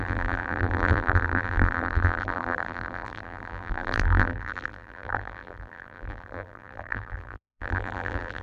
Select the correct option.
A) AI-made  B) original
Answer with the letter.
A